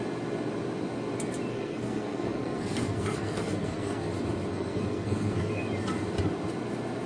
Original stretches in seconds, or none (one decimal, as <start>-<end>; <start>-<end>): 0.0-1.5; 4.1-4.5; 5.6-7.1